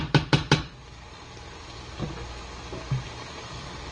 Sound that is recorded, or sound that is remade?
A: recorded